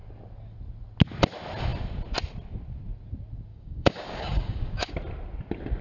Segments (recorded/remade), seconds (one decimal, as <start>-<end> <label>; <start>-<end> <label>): 0.0-3.5 recorded; 3.5-4.9 remade; 4.9-5.8 recorded